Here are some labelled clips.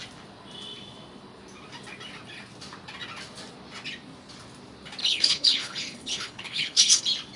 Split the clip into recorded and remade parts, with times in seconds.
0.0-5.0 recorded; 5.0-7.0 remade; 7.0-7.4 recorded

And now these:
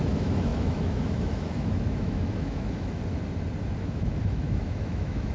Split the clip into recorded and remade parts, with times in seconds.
0.0-3.0 remade; 3.0-3.8 recorded; 3.8-5.3 remade

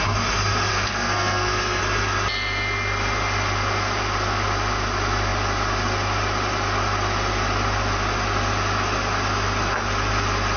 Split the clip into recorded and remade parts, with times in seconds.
0.0-0.7 recorded; 0.7-1.8 remade; 1.8-10.6 recorded